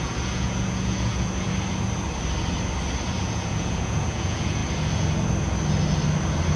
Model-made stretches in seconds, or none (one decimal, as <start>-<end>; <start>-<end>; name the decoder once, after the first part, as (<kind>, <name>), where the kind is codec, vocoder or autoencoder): 0.0-1.5 (vocoder, Vocos); 3.2-4.6